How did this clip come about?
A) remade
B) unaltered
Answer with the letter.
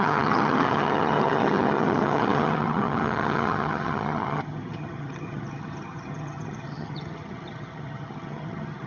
A